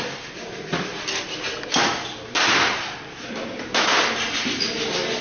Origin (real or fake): real